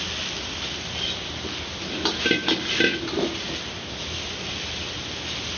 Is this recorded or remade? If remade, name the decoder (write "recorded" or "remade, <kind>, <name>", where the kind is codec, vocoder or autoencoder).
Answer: recorded